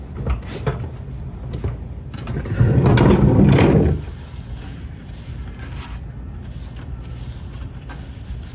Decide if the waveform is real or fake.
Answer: real